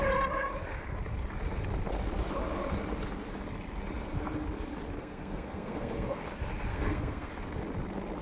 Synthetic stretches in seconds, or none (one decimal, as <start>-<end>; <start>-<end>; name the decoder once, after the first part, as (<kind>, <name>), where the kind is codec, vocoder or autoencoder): 5.0-6.2 (codec, SNAC); 6.7-7.3